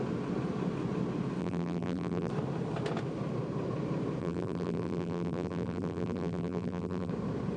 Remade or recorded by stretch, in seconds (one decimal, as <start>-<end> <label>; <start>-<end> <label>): 0.0-1.4 recorded; 1.4-2.3 remade; 2.3-4.2 recorded; 4.2-7.1 remade; 7.1-7.6 recorded